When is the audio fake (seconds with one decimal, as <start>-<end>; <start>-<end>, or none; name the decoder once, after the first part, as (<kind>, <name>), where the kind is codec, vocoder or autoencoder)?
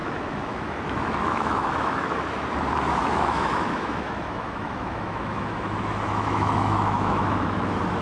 0.0-2.4 (autoencoder, DAC-VAE); 3.0-8.0